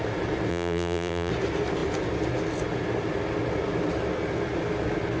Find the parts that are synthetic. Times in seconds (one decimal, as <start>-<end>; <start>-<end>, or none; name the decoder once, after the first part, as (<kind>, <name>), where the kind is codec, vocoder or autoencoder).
0.5-1.3 (vocoder, BigVGAN v2)